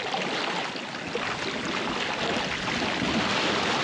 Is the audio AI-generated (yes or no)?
no